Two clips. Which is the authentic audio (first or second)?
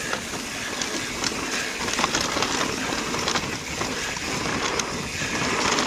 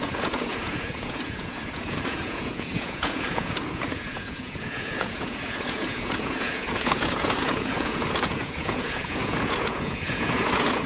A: first